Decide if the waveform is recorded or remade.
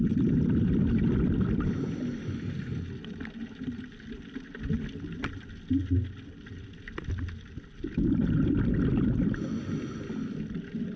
recorded